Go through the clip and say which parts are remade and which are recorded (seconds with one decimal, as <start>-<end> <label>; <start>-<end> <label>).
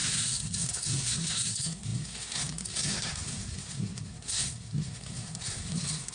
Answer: 0.0-6.1 remade